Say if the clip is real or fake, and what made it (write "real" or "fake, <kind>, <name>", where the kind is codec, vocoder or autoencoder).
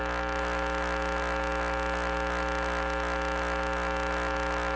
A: real